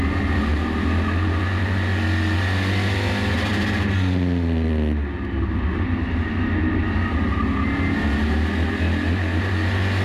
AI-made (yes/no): no